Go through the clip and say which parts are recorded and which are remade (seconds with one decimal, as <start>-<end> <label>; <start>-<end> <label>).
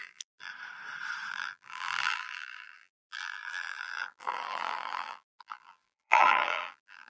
0.0-0.5 remade; 0.5-1.3 recorded; 1.3-7.1 remade